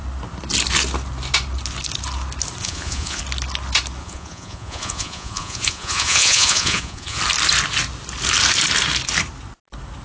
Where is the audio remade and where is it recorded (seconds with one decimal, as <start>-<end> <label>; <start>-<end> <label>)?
0.0-2.6 recorded; 2.6-3.2 remade; 3.2-4.0 recorded; 4.0-7.2 remade; 7.2-10.0 recorded

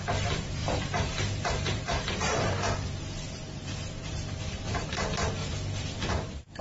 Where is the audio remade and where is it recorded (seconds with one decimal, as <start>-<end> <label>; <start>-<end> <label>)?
0.0-5.4 remade; 5.4-6.1 recorded; 6.1-6.6 remade

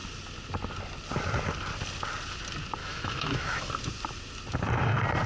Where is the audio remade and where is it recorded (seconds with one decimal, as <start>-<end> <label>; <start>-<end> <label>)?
0.0-2.8 recorded; 2.8-3.7 remade; 3.7-5.3 recorded

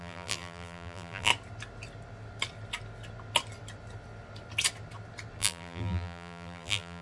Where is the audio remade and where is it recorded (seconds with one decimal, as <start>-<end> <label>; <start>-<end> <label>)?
0.0-1.3 remade; 1.3-5.4 recorded; 5.4-7.0 remade

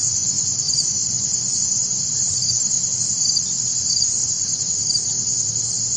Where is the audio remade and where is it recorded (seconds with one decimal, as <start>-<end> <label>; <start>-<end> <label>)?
0.0-4.7 remade; 4.7-6.0 recorded

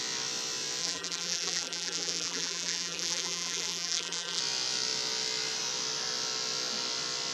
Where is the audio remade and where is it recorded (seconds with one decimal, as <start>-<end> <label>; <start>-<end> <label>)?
0.0-0.8 recorded; 0.8-4.4 remade; 4.4-7.3 recorded